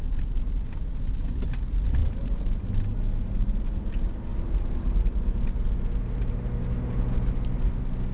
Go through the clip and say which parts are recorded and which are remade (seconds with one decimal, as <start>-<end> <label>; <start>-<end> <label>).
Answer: 0.0-2.0 recorded; 2.0-2.8 remade; 2.8-4.3 recorded; 4.3-5.2 remade; 5.2-8.1 recorded